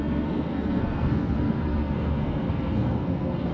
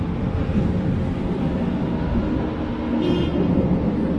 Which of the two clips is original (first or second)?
second